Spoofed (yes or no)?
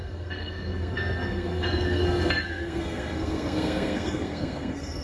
yes